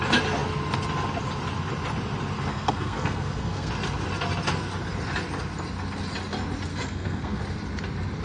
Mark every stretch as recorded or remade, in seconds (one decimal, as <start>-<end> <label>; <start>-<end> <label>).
0.0-2.5 recorded; 2.5-3.7 remade; 3.7-6.7 recorded; 6.7-7.4 remade; 7.4-8.2 recorded

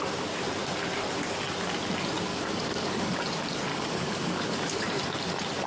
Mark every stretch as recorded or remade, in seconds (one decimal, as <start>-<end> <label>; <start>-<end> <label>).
0.0-2.3 recorded; 2.3-3.2 remade; 3.2-3.7 recorded; 3.7-5.0 remade; 5.0-5.7 recorded

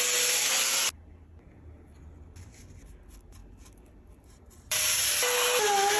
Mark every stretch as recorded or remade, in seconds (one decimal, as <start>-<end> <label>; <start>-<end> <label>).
0.0-3.4 recorded; 3.4-5.2 remade; 5.2-6.0 recorded

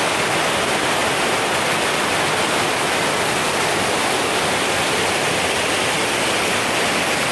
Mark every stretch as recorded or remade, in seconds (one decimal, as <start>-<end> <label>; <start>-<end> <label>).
0.0-7.3 recorded

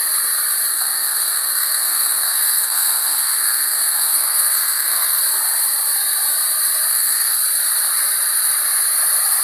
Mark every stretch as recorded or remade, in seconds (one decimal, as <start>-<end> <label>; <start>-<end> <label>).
0.0-0.7 recorded; 0.7-5.2 remade; 5.2-6.9 recorded; 6.9-7.4 remade; 7.4-9.4 recorded

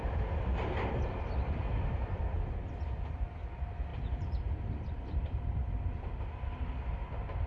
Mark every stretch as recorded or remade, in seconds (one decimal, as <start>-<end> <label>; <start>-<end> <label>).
0.0-0.5 recorded; 0.5-1.2 remade; 1.2-3.9 recorded; 3.9-5.4 remade; 5.4-7.5 recorded